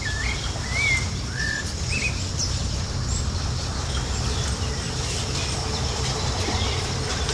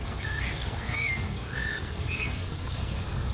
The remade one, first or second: second